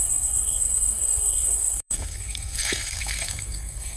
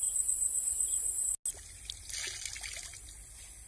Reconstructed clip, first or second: first